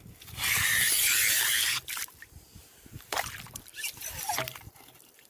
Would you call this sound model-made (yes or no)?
yes